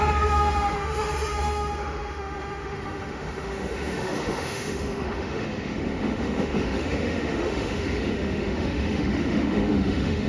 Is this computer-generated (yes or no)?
yes